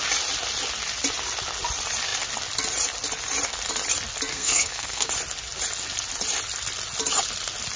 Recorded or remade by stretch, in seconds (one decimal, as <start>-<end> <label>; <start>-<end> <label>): 0.0-4.3 recorded; 4.3-5.1 remade; 5.1-7.8 recorded